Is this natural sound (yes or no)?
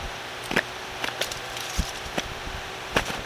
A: no